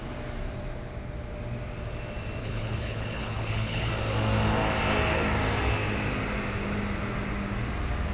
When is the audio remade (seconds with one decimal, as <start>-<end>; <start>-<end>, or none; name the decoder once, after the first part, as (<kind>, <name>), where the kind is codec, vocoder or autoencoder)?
2.4-3.9 (codec, HILCodec)